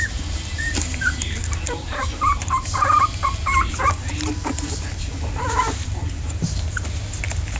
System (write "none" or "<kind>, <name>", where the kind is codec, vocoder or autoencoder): vocoder, BigVGAN v2